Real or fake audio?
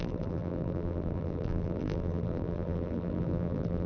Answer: fake